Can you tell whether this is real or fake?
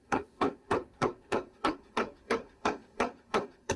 fake